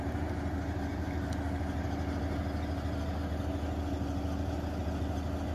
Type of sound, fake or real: real